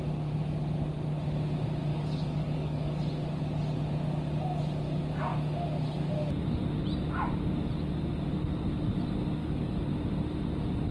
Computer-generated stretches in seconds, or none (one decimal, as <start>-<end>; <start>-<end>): 1.9-3.0; 9.4-9.9

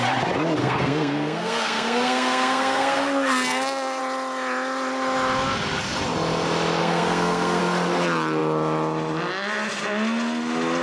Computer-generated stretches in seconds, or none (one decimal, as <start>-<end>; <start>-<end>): 0.6-4.0; 6.8-7.6

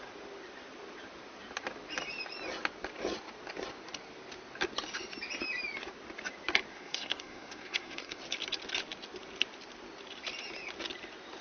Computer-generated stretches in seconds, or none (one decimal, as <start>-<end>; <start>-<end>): 6.7-8.2

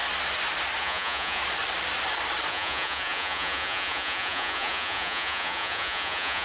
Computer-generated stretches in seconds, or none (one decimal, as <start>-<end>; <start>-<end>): 0.8-1.4; 2.5-6.4

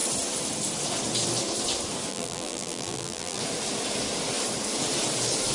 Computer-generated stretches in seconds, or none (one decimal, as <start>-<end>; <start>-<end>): 2.1-3.4

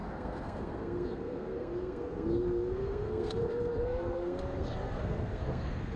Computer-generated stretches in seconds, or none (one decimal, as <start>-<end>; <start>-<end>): 0.0-6.0

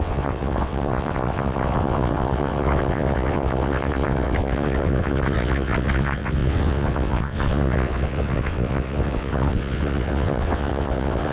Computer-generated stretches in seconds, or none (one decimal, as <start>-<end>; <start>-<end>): 0.0-11.3